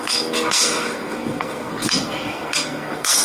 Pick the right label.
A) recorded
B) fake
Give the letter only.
B